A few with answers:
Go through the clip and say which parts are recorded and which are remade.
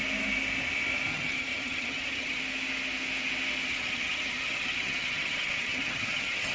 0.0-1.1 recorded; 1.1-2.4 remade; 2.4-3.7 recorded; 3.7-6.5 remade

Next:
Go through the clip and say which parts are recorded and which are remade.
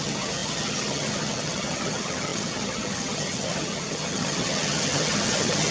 0.0-5.7 remade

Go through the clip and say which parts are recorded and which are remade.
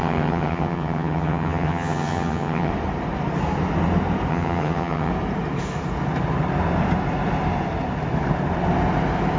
0.0-2.7 remade; 2.7-4.3 recorded; 4.3-5.1 remade; 5.1-9.4 recorded